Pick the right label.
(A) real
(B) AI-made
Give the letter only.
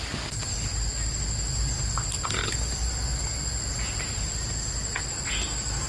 A